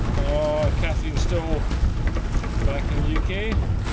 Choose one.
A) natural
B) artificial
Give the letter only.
A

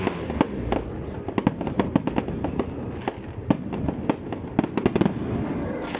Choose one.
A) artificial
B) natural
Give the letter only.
B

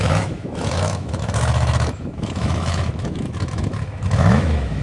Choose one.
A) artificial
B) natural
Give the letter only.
A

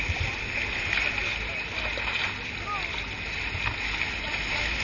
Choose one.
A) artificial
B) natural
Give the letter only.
B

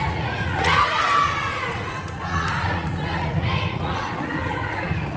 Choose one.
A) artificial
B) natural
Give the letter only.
A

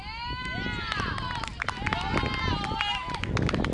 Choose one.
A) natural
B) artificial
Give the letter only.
A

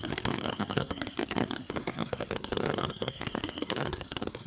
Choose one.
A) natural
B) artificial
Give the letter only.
B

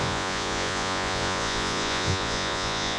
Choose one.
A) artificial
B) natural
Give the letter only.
A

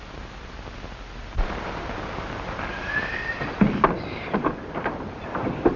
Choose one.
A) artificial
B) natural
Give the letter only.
B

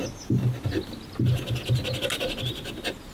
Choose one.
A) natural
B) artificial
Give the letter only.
A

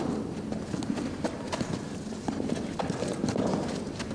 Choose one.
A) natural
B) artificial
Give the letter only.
A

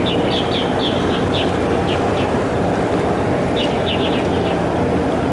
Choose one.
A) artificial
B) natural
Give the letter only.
B